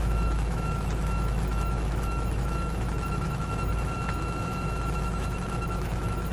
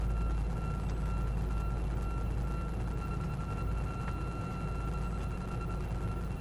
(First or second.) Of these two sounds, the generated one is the first